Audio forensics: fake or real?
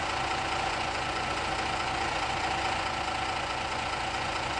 fake